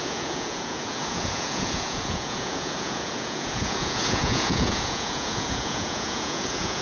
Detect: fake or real fake